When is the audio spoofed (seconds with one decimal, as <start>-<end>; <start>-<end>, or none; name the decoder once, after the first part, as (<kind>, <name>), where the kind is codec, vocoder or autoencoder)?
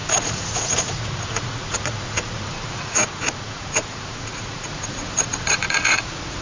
0.0-6.4 (vocoder, Vocos)